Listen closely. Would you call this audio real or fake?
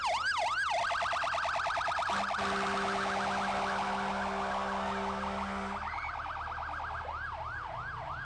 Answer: real